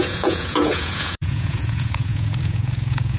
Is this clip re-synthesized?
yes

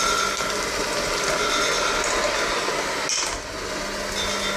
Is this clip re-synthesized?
no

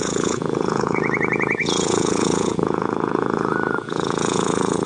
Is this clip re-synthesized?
yes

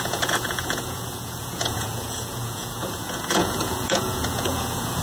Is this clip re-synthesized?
yes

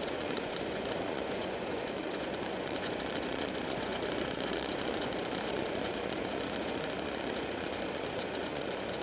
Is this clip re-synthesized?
yes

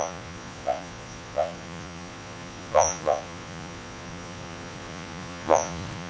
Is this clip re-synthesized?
yes